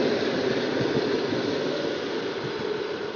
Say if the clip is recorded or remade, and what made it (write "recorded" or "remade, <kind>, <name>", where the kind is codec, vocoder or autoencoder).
recorded